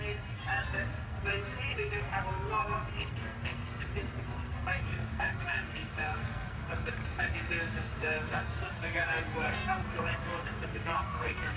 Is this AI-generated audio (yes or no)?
yes